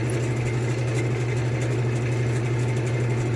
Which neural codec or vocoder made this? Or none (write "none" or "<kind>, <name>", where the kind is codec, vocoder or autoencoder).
none